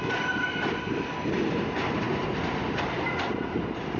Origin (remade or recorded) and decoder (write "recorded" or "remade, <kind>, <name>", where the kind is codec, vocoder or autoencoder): recorded